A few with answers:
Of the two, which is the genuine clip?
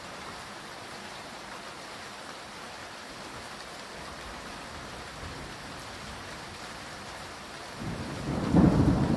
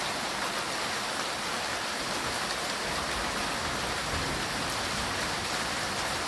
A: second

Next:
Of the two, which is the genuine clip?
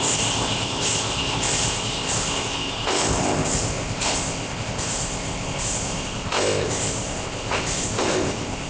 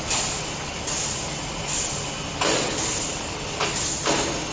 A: second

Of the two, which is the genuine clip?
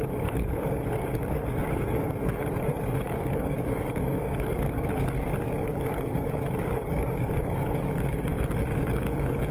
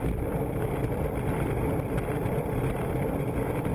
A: second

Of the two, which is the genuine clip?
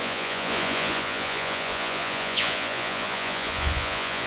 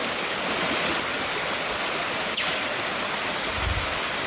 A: second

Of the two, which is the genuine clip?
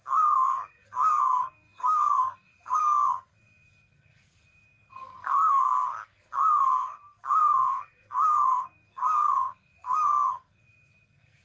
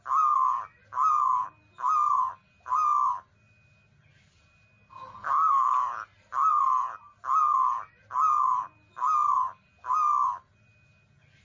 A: second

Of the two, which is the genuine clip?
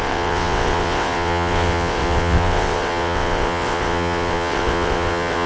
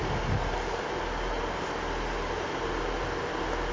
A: second